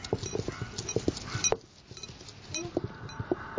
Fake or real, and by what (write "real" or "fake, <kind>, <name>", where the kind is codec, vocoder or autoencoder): real